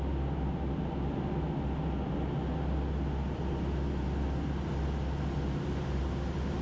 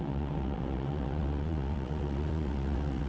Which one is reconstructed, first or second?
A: second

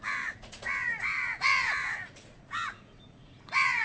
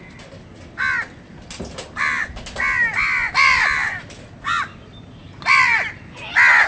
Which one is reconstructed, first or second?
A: first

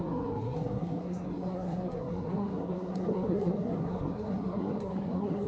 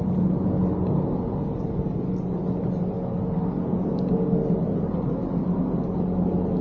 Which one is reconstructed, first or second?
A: first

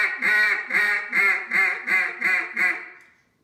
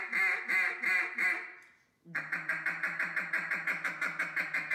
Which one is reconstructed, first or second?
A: first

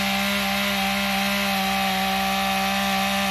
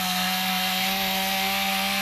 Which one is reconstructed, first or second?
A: second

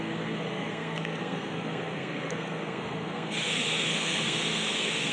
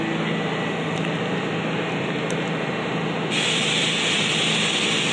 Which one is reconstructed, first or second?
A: first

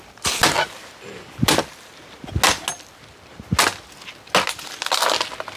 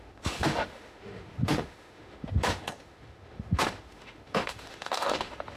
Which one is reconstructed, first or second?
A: second